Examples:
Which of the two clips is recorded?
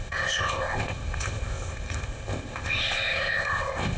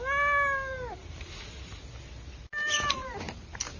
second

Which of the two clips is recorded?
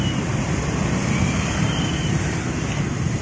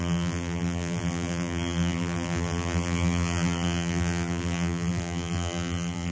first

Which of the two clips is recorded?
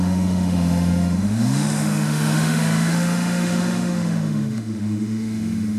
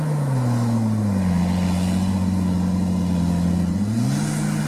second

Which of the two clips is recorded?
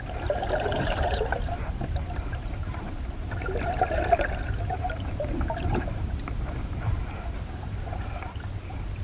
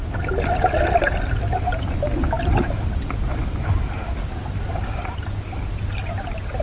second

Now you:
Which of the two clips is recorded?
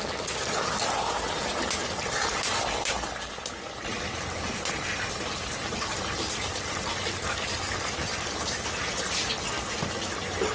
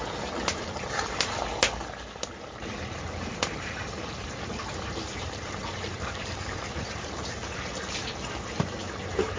first